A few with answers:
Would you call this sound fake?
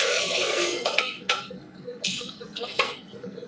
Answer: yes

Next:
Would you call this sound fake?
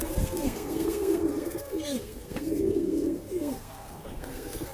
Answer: yes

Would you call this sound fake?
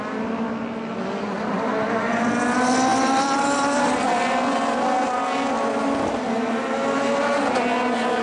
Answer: no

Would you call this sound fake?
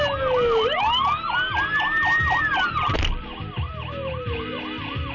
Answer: no